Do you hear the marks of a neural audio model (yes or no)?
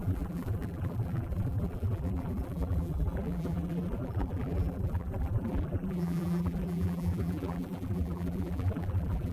yes